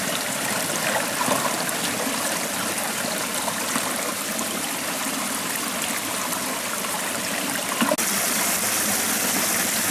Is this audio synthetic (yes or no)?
no